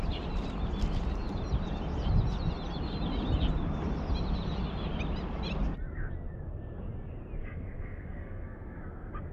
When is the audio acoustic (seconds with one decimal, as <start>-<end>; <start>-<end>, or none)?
0.0-7.4